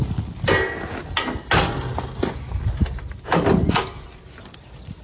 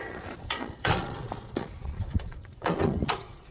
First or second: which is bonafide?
first